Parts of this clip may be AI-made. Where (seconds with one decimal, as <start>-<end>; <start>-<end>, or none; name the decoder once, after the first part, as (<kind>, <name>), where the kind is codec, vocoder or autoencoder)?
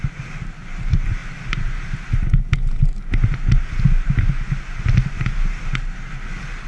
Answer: none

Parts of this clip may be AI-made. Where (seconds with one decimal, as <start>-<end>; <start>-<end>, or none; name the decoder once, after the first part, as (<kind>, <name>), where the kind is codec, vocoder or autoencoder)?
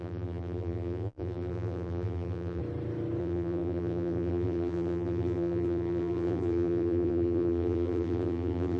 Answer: 0.0-2.6 (vocoder, BigVGAN v2); 3.2-8.8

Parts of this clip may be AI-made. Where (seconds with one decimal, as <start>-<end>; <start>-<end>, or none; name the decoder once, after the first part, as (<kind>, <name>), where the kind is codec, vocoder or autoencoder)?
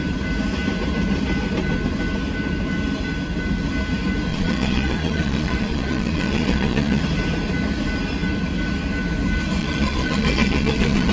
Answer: 4.3-7.0 (vocoder, Vocos); 9.6-11.1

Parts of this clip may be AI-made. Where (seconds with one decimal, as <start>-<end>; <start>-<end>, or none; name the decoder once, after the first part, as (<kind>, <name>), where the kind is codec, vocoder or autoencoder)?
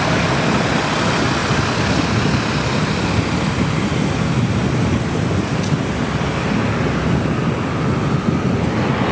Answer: none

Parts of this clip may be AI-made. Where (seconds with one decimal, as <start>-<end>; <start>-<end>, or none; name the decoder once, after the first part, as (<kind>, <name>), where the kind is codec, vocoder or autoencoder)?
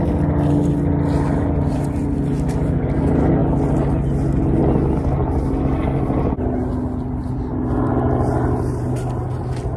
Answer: none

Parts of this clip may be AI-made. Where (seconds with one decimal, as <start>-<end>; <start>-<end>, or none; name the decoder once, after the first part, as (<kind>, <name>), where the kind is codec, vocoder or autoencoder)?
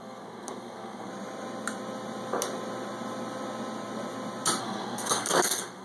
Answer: 0.0-1.1 (codec, SNAC); 4.6-5.8